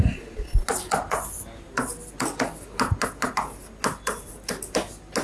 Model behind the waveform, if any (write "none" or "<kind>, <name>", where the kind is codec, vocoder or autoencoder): none